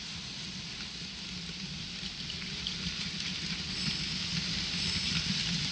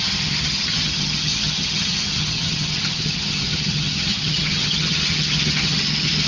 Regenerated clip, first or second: second